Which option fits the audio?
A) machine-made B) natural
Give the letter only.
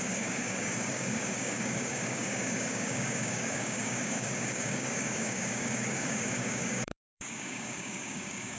A